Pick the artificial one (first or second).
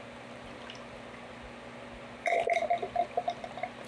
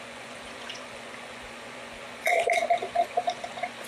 second